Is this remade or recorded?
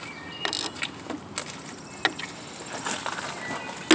recorded